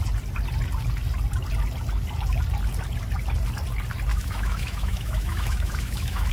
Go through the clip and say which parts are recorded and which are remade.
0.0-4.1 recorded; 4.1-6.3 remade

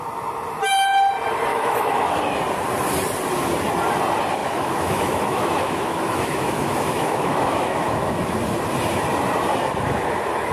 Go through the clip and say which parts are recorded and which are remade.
0.0-1.5 recorded; 1.5-2.2 remade; 2.2-4.4 recorded; 4.4-8.2 remade; 8.2-10.5 recorded